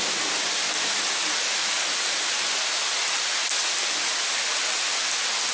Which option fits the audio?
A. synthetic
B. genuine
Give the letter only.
B